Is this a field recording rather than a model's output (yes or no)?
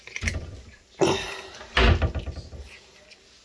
yes